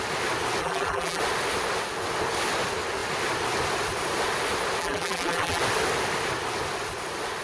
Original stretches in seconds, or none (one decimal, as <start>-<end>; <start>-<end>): 0.0-0.6; 1.2-4.8; 5.6-7.4